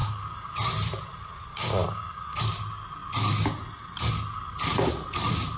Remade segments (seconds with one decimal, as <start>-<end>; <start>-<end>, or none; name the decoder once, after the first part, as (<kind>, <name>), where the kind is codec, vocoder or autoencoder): 0.0-0.6 (codec, DAC); 1.5-2.4

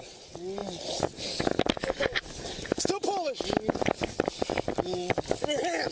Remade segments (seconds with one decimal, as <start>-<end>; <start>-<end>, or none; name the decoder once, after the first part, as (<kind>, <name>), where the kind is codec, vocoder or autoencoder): none

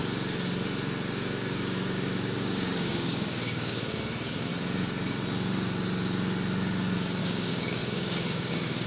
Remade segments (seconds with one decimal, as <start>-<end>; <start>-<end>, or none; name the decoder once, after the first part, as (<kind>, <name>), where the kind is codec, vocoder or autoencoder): 1.1-4.5 (codec, DAC); 7.2-8.9

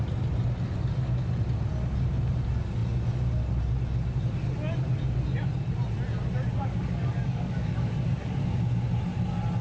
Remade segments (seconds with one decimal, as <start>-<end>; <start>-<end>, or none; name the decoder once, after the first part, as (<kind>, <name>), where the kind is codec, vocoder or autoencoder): 6.5-8.6 (codec, DAC)